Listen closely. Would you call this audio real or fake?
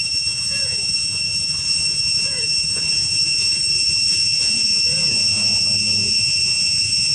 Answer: fake